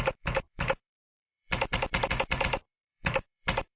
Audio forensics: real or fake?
fake